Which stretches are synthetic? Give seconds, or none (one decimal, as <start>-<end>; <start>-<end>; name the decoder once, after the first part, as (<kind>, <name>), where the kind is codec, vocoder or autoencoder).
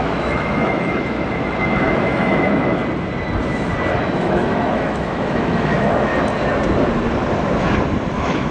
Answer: 0.0-2.8 (autoencoder, DAC-VAE); 4.0-6.1; 8.1-8.5